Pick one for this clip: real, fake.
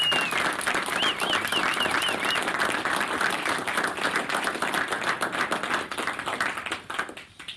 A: real